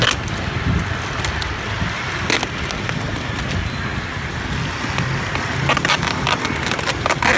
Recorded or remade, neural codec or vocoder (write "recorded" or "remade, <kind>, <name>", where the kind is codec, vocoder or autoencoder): recorded